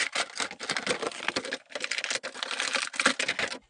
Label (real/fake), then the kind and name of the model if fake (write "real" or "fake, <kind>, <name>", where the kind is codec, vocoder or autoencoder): real